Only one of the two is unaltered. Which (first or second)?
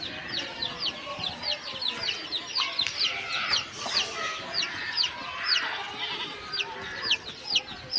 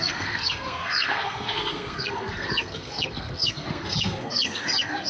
first